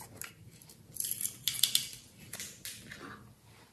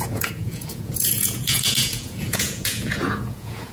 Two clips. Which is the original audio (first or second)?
first